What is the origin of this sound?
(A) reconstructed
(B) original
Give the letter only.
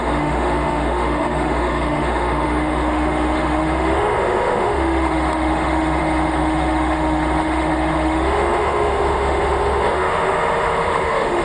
A